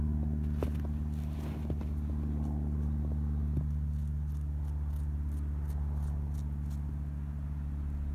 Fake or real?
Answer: real